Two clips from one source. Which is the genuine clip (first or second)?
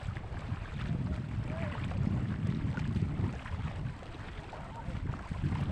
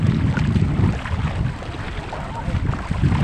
second